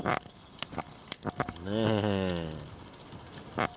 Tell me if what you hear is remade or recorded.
recorded